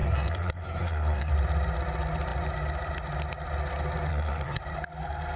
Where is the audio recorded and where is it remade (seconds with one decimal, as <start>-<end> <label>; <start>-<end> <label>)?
0.0-1.3 remade; 1.3-4.1 recorded; 4.1-4.6 remade; 4.6-5.4 recorded